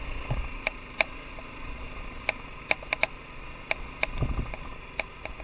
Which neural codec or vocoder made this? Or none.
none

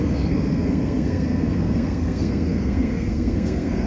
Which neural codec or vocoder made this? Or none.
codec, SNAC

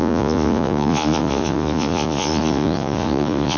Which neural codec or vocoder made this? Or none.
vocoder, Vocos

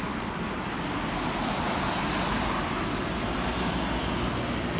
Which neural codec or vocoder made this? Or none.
none